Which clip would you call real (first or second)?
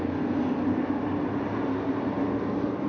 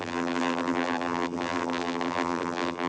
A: first